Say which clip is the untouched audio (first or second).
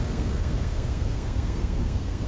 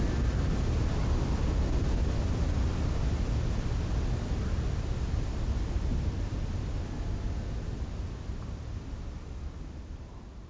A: second